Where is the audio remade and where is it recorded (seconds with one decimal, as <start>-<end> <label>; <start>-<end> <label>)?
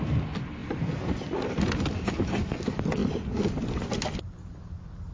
0.0-5.1 recorded